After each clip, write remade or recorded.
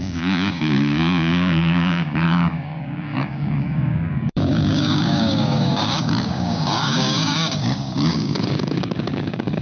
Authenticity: remade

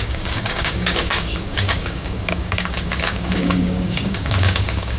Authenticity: remade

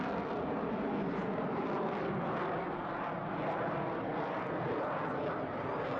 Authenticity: recorded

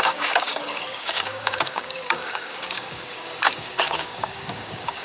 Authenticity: remade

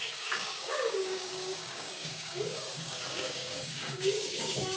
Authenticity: remade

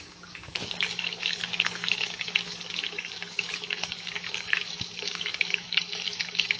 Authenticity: remade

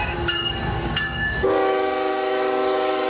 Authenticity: remade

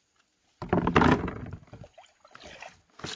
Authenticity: recorded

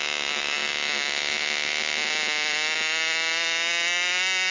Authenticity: recorded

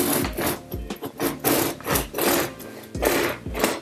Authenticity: recorded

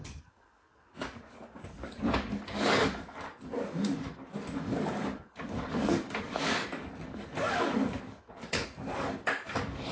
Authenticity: remade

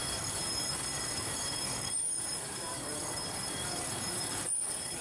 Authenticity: remade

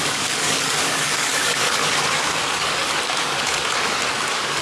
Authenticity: remade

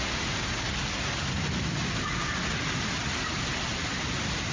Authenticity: recorded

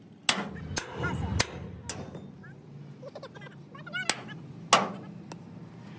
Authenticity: recorded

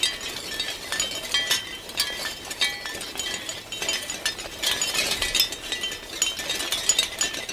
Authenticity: recorded